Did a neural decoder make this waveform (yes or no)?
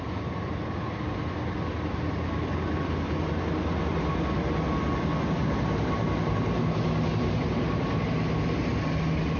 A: no